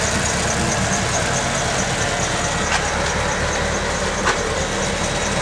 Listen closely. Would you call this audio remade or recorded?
recorded